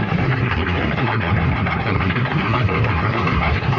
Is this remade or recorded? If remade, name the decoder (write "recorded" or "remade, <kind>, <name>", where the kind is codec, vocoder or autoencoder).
remade, codec, SNAC